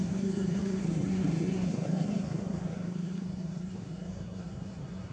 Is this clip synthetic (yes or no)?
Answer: yes